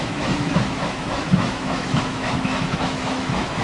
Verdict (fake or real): fake